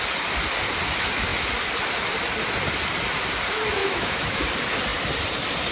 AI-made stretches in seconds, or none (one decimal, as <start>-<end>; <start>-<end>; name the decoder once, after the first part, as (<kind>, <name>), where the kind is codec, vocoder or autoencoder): 3.8-4.5 (autoencoder, DAC-VAE)